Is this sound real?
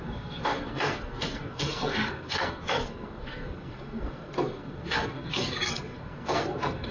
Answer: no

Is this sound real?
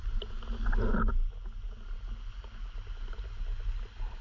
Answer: yes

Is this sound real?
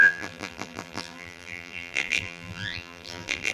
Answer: no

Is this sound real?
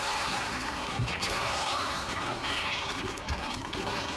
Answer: no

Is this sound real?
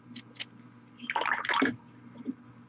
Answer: yes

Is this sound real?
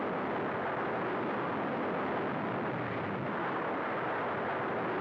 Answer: yes